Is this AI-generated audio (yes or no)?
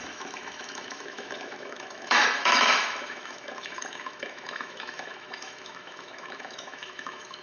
yes